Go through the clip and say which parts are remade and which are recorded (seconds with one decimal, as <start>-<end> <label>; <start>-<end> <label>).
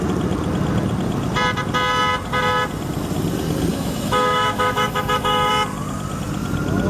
0.0-3.7 recorded; 3.7-5.5 remade; 5.5-6.9 recorded